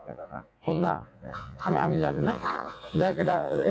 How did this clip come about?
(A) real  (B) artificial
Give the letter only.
B